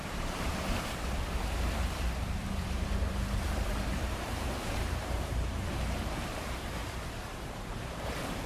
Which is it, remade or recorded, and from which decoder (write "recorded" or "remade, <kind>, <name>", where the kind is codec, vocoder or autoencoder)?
remade, vocoder, BigVGAN v2